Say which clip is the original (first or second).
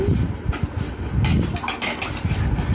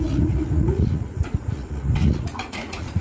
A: first